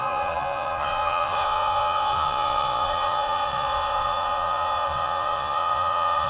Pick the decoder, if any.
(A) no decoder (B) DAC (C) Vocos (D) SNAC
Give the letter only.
C